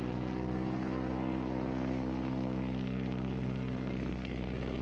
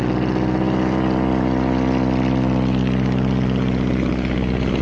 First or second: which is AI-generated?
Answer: first